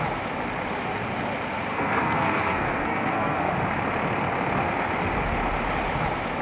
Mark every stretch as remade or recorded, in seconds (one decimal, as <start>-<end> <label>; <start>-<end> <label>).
0.0-1.7 recorded; 1.7-3.5 remade; 3.5-6.4 recorded